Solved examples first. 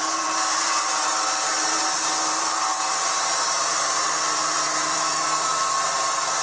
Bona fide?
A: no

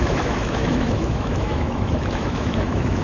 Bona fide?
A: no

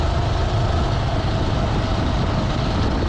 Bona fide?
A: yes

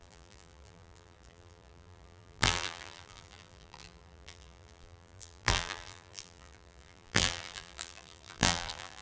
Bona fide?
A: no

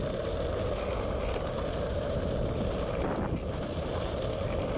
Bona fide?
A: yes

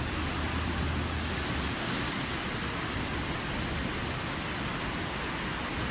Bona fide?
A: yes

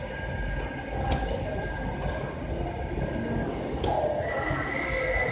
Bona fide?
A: yes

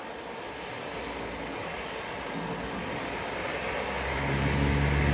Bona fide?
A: yes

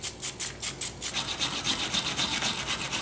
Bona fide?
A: yes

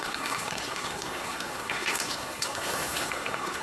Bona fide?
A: no